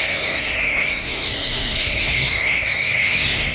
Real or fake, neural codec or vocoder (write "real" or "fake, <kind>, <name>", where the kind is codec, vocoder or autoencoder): fake, codec, SNAC